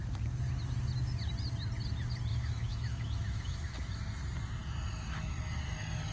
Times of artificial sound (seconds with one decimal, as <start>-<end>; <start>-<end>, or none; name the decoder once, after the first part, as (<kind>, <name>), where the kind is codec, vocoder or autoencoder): 2.3-4.0 (autoencoder, DAC-VAE)